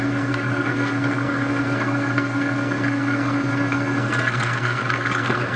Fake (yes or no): yes